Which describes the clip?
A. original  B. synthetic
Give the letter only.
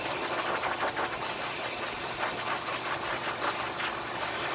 A